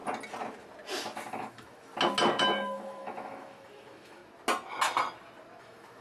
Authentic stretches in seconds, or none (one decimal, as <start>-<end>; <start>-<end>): 0.0-1.3; 1.9-2.4; 4.2-5.6